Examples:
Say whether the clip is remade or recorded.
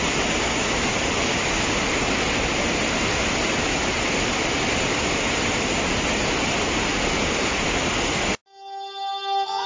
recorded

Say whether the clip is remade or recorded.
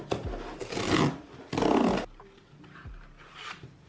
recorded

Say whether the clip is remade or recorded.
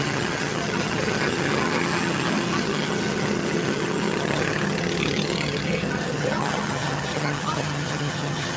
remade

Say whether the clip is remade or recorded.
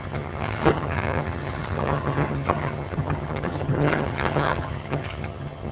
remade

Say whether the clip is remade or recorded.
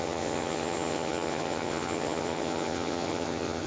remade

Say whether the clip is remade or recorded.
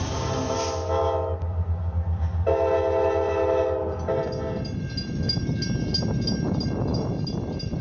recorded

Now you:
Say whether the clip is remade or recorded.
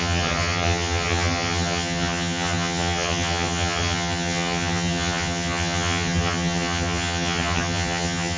remade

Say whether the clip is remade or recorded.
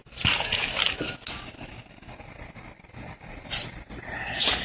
recorded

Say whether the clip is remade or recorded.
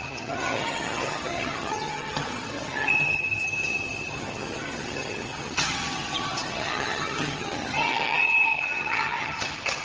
remade